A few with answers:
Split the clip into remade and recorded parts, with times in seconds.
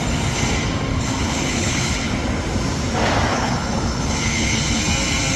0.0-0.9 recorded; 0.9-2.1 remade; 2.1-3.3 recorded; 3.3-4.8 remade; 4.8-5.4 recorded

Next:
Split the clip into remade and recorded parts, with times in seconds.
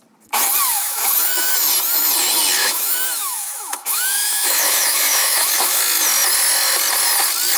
0.0-0.7 recorded; 0.7-1.5 remade; 1.5-2.6 recorded; 2.6-5.8 remade; 5.8-7.6 recorded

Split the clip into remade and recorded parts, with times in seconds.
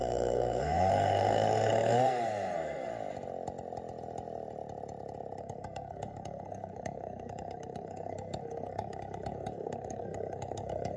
0.0-2.9 remade; 2.9-5.4 recorded; 5.4-11.0 remade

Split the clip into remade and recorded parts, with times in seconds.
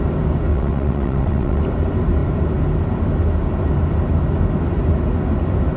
0.0-0.5 recorded; 0.5-1.6 remade; 1.6-5.8 recorded